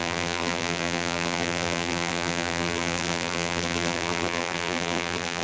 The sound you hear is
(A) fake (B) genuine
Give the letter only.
A